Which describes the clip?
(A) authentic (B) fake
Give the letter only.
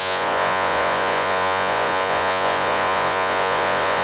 B